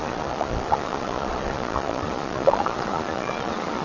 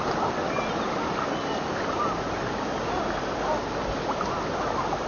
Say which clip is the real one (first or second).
second